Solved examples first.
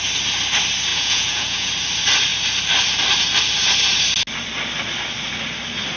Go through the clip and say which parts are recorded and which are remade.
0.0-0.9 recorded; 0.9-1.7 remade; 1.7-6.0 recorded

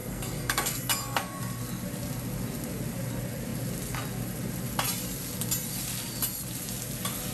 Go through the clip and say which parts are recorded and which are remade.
0.0-1.4 remade; 1.4-7.3 recorded

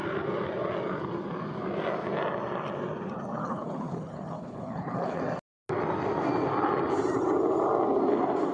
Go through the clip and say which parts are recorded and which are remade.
0.0-3.4 recorded; 3.4-5.2 remade; 5.2-8.5 recorded

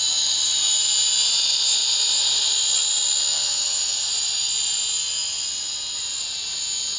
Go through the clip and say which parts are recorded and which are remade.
0.0-7.0 recorded

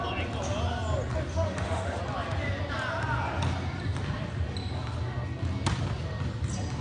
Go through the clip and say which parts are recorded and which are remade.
0.0-1.3 recorded; 1.3-2.0 remade; 2.0-6.8 recorded